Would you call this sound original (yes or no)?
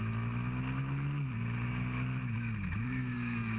yes